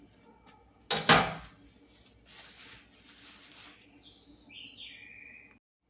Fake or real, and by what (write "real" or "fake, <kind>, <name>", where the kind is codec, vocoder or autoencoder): real